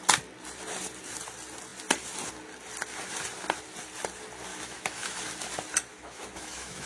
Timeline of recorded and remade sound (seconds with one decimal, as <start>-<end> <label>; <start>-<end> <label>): 0.0-4.5 recorded; 4.5-5.2 remade; 5.2-5.9 recorded; 5.9-6.9 remade